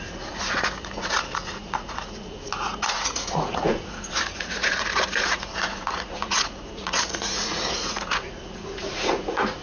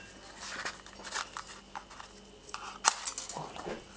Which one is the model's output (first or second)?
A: first